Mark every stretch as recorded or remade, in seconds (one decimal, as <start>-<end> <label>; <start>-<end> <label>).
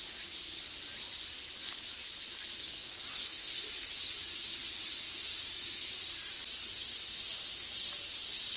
0.0-3.1 recorded; 3.1-3.6 remade; 3.6-8.6 recorded